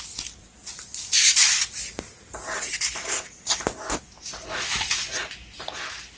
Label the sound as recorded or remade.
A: recorded